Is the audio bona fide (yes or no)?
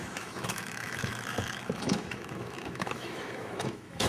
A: no